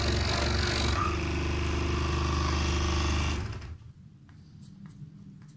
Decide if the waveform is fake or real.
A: real